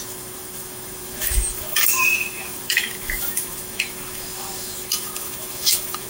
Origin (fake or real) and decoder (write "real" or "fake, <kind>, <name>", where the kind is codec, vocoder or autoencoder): fake, autoencoder, DAC-VAE